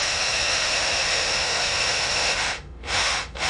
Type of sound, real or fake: fake